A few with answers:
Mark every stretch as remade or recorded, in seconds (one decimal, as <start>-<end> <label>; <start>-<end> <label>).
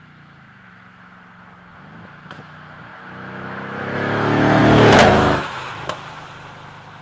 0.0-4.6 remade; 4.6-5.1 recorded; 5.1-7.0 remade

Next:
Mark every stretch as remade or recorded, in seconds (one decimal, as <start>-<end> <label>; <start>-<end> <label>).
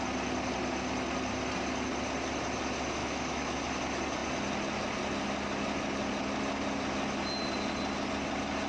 0.0-3.0 recorded; 3.0-3.6 remade; 3.6-8.7 recorded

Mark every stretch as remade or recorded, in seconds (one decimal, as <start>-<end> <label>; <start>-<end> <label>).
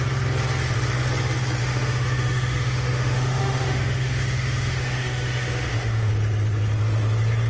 0.0-1.6 recorded; 1.6-6.1 remade; 6.1-7.5 recorded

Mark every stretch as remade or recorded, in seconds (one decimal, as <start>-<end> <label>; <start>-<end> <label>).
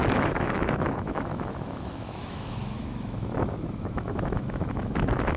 0.0-5.4 remade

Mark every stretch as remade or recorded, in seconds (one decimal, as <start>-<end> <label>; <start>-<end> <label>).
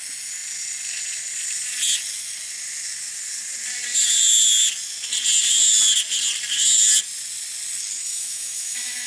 0.0-8.0 recorded; 8.0-9.1 remade